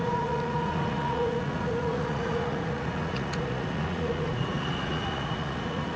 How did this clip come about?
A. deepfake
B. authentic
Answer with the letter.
A